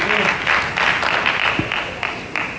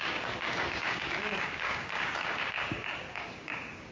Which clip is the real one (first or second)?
first